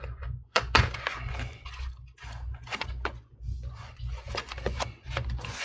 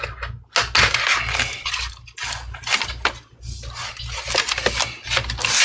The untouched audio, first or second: second